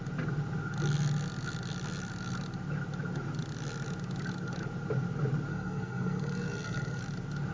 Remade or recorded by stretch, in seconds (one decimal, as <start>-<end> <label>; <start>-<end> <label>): 0.0-5.5 recorded; 5.5-7.0 remade; 7.0-7.5 recorded